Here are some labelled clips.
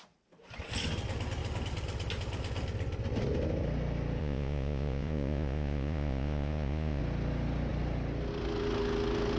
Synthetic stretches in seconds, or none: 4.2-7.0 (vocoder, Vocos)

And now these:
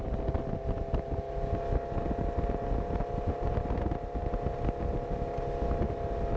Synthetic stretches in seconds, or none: none